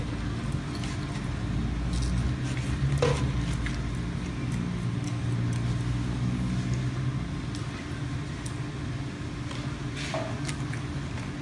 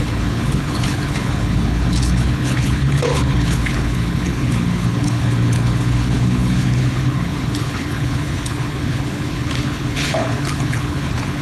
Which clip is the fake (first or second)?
second